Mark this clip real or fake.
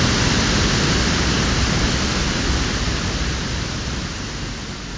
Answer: real